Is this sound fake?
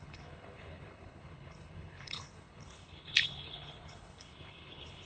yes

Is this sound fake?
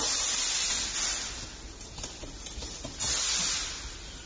no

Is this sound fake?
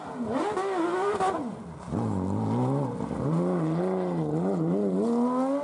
no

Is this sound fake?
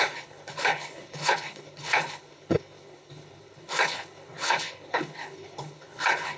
yes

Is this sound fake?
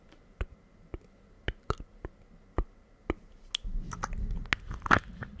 no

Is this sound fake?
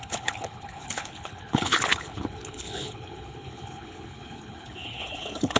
yes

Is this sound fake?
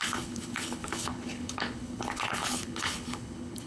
yes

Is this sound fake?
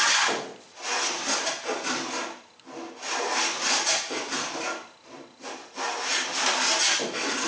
no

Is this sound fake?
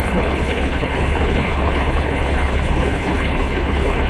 yes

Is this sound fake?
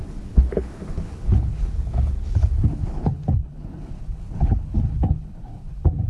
yes